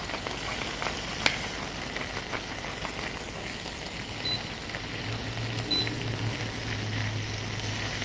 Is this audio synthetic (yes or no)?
no